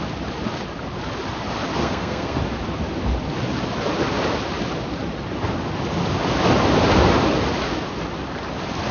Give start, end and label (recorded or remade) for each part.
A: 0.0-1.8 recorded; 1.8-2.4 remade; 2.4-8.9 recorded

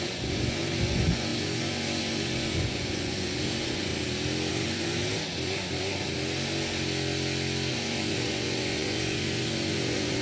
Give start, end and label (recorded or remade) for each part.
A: 0.0-3.9 remade; 3.9-4.5 recorded; 4.5-5.0 remade; 5.0-7.7 recorded; 7.7-10.2 remade